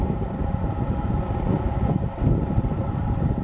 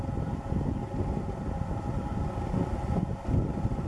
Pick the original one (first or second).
second